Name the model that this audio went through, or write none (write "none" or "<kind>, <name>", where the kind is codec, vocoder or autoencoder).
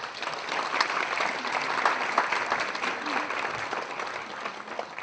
none